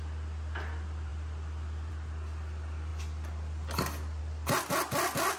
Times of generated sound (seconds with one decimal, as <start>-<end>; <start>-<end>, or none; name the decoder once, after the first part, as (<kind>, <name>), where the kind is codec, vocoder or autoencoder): none